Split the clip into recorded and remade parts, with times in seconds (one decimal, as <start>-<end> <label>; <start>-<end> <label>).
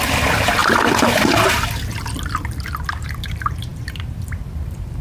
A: 0.0-0.6 remade; 0.6-3.0 recorded; 3.0-5.0 remade